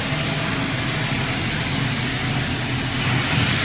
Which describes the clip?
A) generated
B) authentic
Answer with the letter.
B